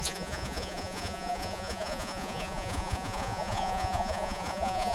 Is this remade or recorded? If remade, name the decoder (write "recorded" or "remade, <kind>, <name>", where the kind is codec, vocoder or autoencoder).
remade, vocoder, Vocos